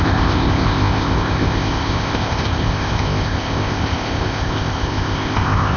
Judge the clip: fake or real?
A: fake